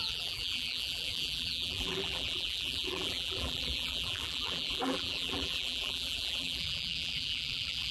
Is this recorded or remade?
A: remade